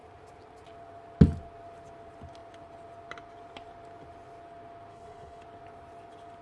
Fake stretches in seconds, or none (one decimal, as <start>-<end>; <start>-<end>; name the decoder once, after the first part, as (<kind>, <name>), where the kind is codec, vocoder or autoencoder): 4.9-5.4 (codec, HILCodec)